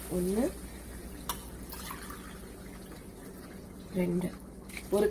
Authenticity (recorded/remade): recorded